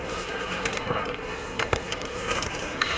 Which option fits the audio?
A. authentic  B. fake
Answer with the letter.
B